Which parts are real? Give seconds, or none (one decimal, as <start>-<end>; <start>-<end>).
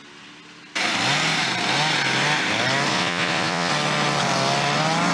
0.0-2.9; 3.7-5.1